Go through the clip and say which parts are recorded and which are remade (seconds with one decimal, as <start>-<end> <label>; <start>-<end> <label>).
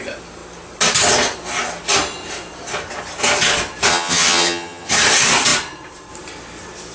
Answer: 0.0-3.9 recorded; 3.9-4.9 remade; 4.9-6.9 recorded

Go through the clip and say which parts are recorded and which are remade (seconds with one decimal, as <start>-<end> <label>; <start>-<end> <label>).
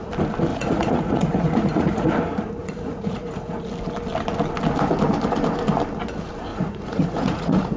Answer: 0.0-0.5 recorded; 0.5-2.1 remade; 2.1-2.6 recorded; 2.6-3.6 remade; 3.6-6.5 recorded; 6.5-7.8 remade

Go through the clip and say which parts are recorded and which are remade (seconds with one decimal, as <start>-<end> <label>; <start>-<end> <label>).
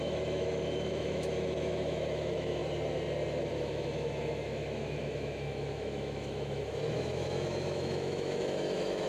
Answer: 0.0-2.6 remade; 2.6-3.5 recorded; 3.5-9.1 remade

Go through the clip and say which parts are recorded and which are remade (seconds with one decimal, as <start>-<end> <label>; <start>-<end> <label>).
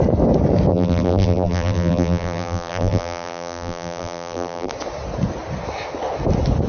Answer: 0.0-0.7 recorded; 0.7-4.7 remade; 4.7-6.7 recorded